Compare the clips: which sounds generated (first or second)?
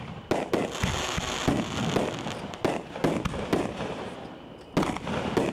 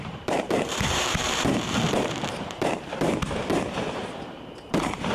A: second